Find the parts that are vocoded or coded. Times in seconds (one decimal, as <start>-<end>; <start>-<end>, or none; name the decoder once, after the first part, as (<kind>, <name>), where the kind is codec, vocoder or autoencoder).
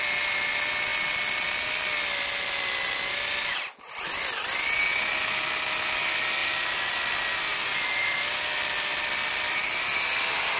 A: 7.5-8.2 (vocoder, BigVGAN v2); 9.6-10.6